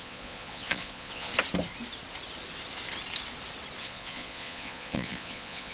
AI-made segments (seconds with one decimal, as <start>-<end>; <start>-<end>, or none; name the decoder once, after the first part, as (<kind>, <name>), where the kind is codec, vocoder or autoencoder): 0.0-1.3 (vocoder, Vocos); 3.8-5.7